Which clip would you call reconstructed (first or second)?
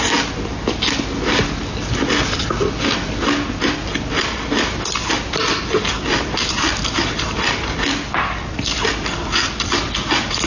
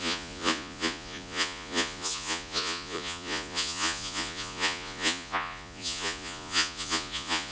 second